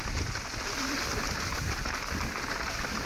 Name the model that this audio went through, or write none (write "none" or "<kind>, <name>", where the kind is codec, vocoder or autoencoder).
none